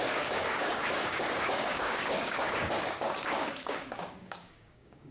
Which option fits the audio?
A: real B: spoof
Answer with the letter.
B